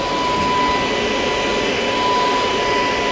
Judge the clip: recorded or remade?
recorded